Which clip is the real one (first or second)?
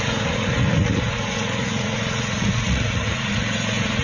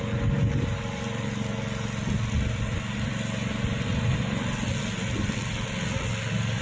second